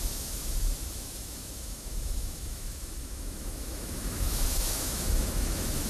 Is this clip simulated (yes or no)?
yes